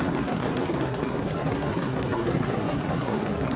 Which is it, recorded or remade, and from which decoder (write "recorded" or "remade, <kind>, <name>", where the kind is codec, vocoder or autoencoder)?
remade, codec, SNAC